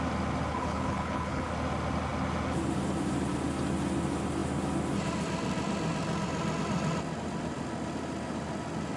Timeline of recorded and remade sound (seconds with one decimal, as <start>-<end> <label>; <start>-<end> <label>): 0.0-0.5 recorded; 0.5-1.5 remade; 1.5-9.0 recorded